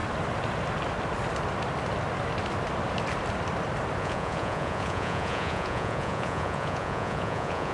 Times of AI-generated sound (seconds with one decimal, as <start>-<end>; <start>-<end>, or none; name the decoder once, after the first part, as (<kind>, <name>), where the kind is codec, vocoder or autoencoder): 4.0-7.7 (vocoder, Vocos)